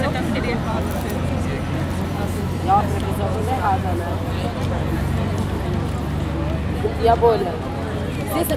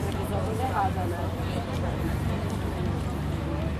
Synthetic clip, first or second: second